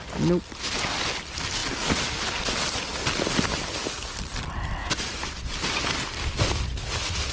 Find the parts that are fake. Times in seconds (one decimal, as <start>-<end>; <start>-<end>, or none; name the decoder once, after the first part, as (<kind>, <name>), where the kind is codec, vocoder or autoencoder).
4.8-5.5 (vocoder, Vocos)